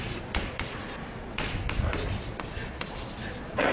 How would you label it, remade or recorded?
remade